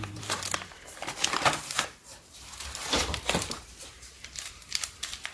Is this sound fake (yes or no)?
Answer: yes